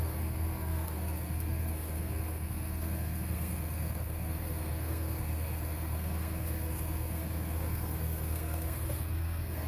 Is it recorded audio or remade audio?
remade